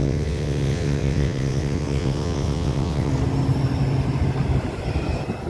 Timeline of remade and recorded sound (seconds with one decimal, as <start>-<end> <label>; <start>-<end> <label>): 0.0-3.1 remade; 3.1-5.5 recorded